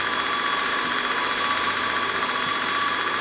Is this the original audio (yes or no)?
yes